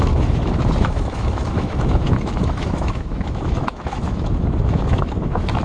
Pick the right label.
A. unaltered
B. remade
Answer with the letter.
B